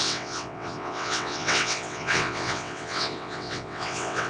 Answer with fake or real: fake